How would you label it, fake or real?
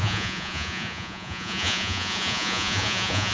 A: fake